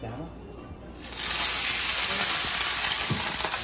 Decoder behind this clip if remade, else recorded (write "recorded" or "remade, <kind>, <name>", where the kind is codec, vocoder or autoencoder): recorded